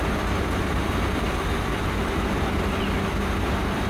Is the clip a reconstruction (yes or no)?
no